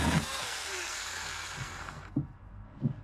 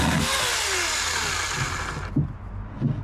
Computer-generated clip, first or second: first